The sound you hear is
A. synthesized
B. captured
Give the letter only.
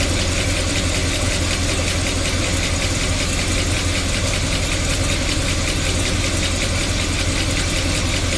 B